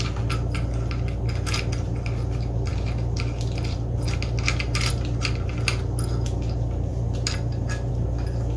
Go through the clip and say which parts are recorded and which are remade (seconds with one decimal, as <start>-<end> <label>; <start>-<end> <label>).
0.0-8.6 recorded